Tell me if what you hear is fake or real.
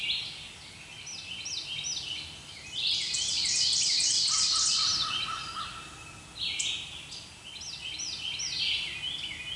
real